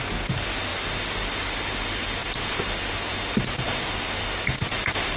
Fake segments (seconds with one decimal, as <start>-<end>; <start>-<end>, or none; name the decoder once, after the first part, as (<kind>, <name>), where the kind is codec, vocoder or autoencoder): none